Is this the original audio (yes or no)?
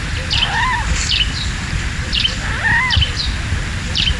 yes